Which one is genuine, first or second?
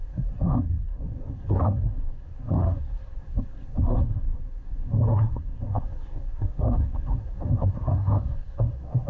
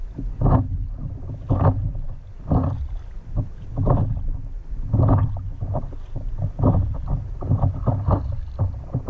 second